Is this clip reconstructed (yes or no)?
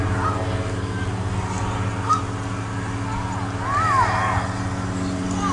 no